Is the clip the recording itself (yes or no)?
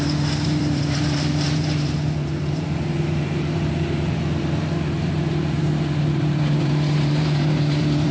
no